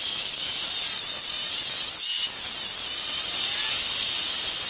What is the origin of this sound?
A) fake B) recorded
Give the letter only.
B